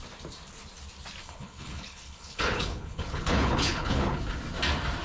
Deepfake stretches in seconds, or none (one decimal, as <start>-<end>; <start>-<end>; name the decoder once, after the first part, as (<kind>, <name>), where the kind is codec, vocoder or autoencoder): 1.2-4.2 (codec, HILCodec)